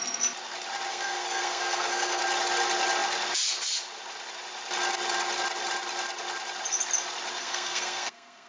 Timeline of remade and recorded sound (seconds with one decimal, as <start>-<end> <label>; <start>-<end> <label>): 0.0-0.9 recorded; 0.9-2.2 remade; 2.2-7.4 recorded; 7.4-8.5 remade

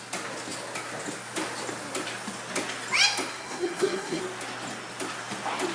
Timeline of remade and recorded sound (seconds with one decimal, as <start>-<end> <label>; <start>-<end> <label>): 0.0-3.3 recorded; 3.3-4.2 remade; 4.2-5.7 recorded